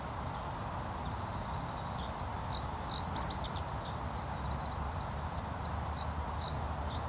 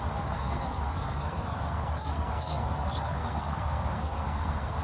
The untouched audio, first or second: first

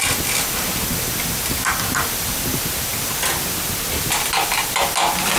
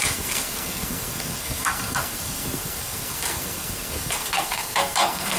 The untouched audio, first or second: first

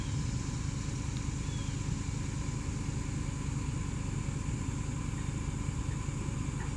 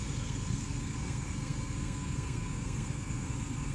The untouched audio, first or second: first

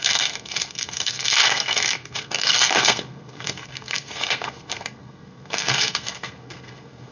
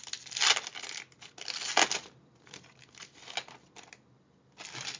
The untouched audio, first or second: second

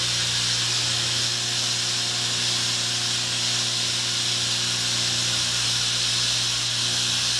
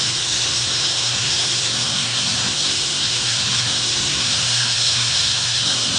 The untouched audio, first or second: first